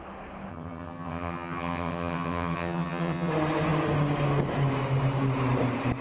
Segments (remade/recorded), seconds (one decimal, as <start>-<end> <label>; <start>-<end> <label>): 0.0-0.5 recorded; 0.5-3.3 remade; 3.3-6.0 recorded